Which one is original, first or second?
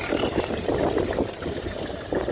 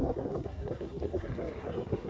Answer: first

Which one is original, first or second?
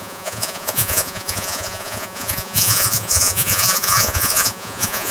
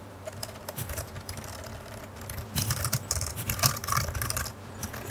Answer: second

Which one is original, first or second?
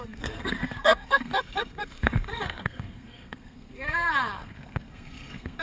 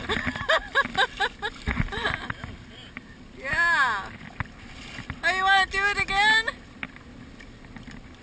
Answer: second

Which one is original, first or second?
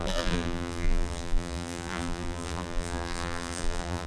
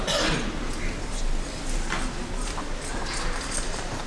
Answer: second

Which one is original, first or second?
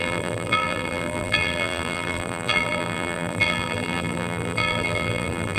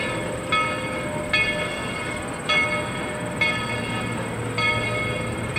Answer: second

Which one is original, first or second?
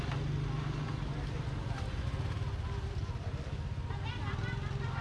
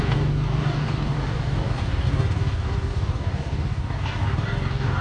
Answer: first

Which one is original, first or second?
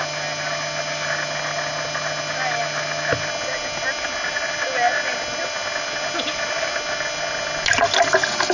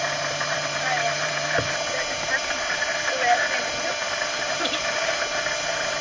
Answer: first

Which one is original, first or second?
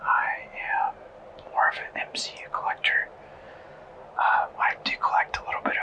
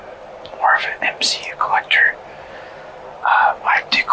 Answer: first